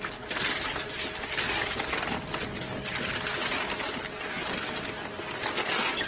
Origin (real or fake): real